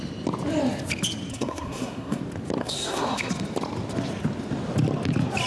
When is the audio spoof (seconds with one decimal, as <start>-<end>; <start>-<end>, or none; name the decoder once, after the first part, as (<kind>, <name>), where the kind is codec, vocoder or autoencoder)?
1.3-2.2 (codec, SNAC); 2.6-3.3